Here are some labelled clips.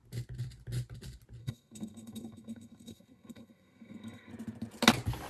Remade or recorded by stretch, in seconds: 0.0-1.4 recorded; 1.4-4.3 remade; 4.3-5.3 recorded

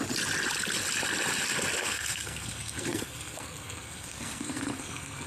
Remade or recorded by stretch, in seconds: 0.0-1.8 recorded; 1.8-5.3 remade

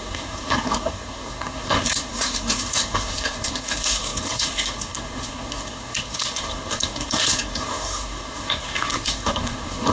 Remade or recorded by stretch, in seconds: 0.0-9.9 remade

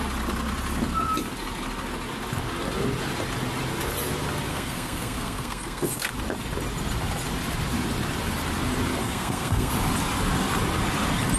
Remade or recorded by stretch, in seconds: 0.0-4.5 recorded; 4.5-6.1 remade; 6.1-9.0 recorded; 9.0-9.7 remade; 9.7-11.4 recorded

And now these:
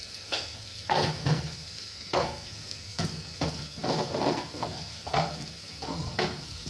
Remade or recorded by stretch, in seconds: 0.0-6.7 remade